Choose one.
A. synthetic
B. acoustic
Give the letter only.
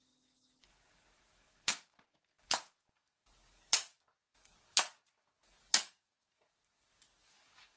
A